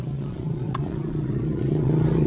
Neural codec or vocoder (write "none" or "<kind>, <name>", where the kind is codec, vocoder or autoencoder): vocoder, Vocos